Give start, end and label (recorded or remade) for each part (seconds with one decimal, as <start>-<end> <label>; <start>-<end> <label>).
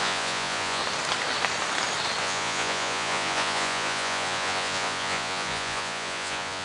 0.0-0.8 remade; 0.8-2.2 recorded; 2.2-6.6 remade